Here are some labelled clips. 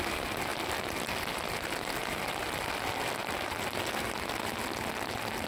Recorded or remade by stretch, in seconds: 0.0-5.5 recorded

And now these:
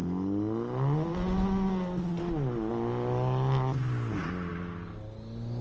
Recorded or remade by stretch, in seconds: 0.0-5.6 recorded

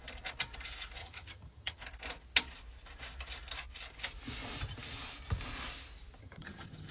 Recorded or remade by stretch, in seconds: 0.0-1.0 recorded; 1.0-1.8 remade; 1.8-6.2 recorded; 6.2-6.9 remade

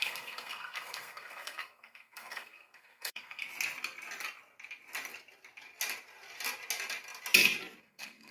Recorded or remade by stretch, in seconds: 0.0-3.4 remade; 3.4-7.8 recorded; 7.8-8.3 remade

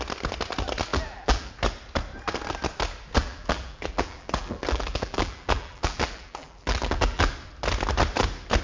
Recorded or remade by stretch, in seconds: 0.0-0.9 recorded; 0.9-1.5 remade; 1.5-3.2 recorded; 3.2-7.3 remade; 7.3-8.6 recorded

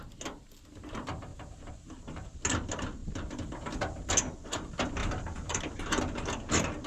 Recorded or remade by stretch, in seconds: 0.0-1.3 recorded; 1.3-2.4 remade; 2.4-5.0 recorded; 5.0-6.0 remade; 6.0-6.9 recorded